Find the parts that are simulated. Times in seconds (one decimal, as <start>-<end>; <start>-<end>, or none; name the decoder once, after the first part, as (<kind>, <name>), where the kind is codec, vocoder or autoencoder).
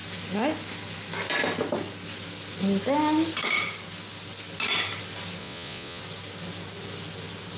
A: 5.4-6.0 (vocoder, Vocos)